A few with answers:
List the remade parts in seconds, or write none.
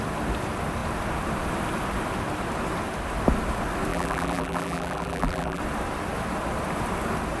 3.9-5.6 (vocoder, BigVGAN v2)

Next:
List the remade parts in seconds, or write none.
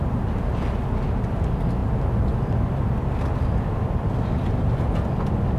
none